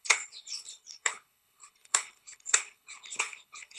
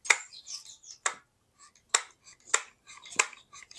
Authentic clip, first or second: second